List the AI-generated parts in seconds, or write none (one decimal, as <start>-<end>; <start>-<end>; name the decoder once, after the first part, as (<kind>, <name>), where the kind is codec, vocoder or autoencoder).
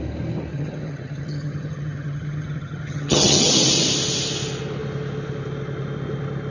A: 0.5-3.5 (vocoder, HiFi-GAN)